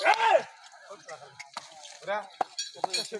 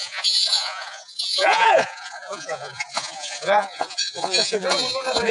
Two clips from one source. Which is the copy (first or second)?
second